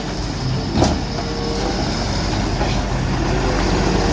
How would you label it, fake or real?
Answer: real